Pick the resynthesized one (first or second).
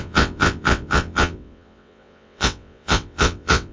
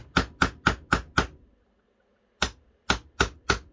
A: first